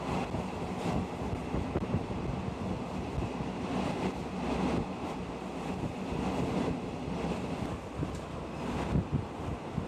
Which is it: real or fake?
real